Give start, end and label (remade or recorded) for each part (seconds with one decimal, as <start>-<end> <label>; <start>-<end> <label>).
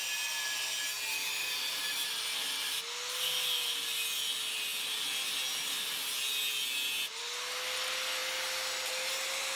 0.0-9.6 recorded